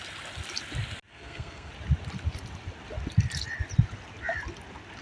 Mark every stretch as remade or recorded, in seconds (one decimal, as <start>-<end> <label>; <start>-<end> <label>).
0.0-1.1 recorded; 1.1-1.7 remade; 1.7-5.0 recorded